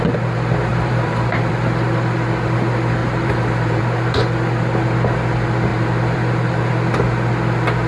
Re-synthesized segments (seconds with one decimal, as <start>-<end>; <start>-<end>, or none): 0.7-1.5; 3.0-3.8; 5.7-6.7